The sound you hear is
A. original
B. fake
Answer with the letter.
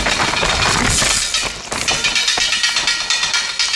A